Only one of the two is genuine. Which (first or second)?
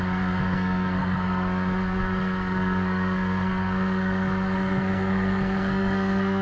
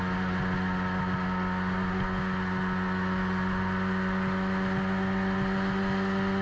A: second